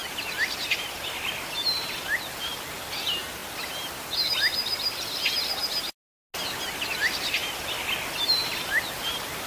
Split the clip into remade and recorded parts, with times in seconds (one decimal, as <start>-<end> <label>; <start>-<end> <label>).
0.0-5.6 remade; 5.6-6.9 recorded; 6.9-7.4 remade; 7.4-8.1 recorded; 8.1-9.5 remade